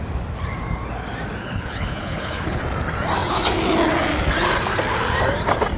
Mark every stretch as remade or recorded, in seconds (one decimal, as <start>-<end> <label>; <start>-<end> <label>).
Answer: 0.0-1.4 recorded; 1.4-2.6 remade; 2.6-5.8 recorded